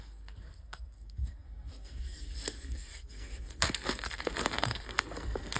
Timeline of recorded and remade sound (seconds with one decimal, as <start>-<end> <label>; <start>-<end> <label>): 0.0-5.6 remade